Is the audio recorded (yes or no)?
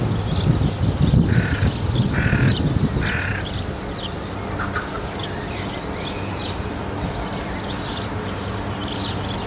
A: yes